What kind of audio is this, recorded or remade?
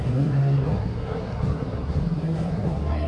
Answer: remade